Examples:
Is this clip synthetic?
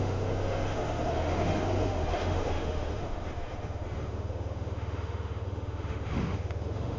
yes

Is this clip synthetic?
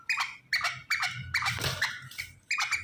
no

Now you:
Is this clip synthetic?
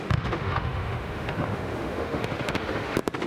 yes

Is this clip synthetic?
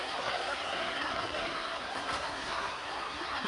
yes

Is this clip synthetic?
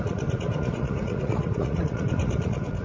yes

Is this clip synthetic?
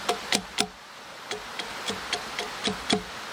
no